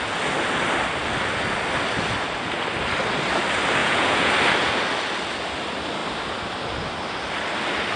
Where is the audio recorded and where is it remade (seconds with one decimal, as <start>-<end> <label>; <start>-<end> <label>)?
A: 0.0-3.8 recorded; 3.8-4.3 remade; 4.3-8.0 recorded